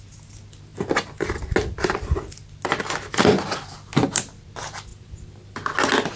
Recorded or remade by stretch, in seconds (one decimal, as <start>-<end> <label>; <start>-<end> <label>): 0.0-6.2 recorded